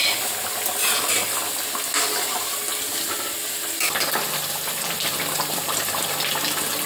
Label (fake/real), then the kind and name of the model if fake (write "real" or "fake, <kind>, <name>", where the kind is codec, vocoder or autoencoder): real